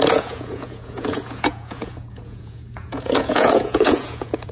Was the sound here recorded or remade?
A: remade